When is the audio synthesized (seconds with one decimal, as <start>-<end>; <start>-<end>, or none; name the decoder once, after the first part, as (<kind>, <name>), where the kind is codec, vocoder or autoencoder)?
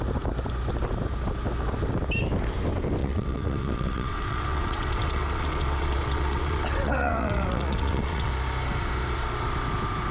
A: 3.0-8.3 (vocoder, WaveNeXt)